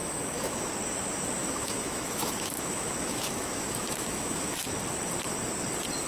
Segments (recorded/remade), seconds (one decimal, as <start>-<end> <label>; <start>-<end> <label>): 0.0-0.7 remade; 0.7-1.4 recorded; 1.4-4.7 remade; 4.7-6.1 recorded